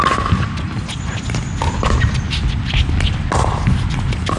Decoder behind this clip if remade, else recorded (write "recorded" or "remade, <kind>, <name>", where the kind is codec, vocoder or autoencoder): recorded